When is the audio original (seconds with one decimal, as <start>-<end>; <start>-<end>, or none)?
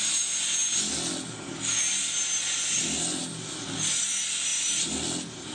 0.0-5.5